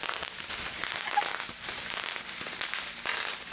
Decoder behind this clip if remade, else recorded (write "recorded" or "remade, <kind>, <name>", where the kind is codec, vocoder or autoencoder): recorded